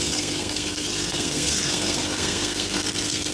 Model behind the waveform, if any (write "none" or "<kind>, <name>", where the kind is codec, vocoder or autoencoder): codec, SNAC